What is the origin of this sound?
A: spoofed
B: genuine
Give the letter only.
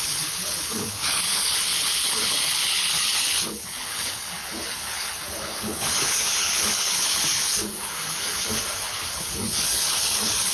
A